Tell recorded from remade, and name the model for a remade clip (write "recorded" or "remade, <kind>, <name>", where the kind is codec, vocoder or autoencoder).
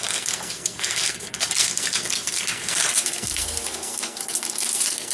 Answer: remade, codec, SNAC